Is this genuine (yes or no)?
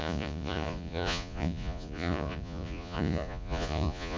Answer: no